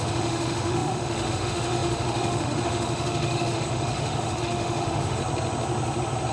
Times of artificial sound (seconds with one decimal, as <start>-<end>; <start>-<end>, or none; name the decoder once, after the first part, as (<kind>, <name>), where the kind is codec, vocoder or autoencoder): 0.0-5.2 (autoencoder, DAC-VAE)